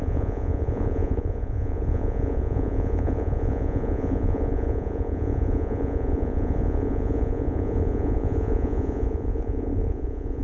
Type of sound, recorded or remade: remade